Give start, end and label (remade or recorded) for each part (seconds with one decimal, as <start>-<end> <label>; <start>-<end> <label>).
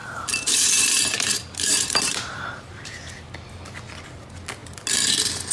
0.0-3.3 remade; 3.3-5.5 recorded